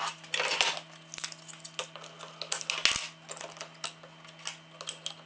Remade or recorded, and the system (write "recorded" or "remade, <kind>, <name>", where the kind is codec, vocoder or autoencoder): recorded